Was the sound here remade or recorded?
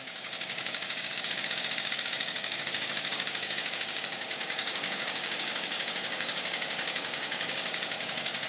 remade